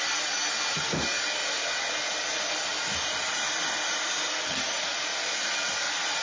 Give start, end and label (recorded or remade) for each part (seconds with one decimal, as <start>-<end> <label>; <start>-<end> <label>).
0.0-6.2 recorded